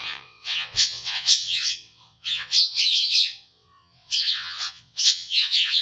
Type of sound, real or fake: fake